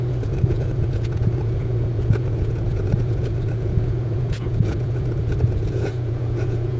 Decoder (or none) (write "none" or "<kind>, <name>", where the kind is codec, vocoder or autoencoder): vocoder, Vocos